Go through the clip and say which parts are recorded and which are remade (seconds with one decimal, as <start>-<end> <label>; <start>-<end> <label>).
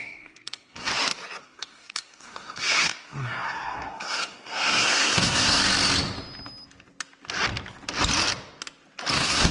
0.0-0.9 remade; 0.9-1.4 recorded; 1.4-5.6 remade; 5.6-9.1 recorded; 9.1-9.5 remade